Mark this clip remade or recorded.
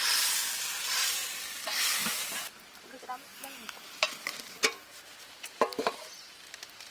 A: recorded